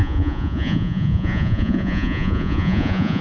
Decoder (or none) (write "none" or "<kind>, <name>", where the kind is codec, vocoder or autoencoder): vocoder, Vocos